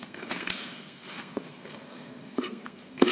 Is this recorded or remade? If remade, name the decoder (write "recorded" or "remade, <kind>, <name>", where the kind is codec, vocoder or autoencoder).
remade, codec, SNAC